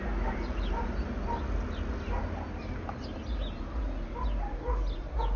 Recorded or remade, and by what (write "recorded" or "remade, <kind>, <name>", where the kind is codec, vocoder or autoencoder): recorded